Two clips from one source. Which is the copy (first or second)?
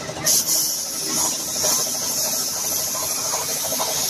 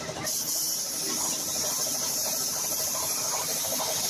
second